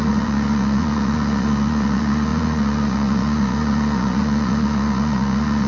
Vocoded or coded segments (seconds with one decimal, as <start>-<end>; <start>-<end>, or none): 0.0-5.7

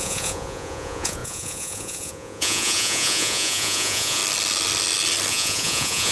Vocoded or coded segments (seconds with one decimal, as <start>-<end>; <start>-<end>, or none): 0.0-4.2; 5.3-6.1

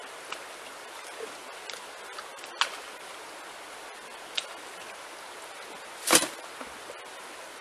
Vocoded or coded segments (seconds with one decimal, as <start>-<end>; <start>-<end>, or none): none

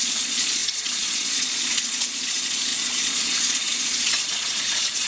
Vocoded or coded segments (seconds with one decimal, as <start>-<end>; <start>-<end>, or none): 0.0-5.1

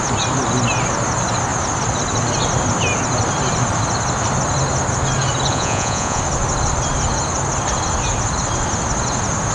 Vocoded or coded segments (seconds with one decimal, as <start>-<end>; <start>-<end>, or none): 5.5-6.2

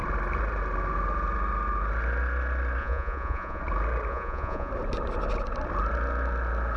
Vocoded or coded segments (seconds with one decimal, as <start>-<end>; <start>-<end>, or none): 2.8-3.6; 4.1-4.7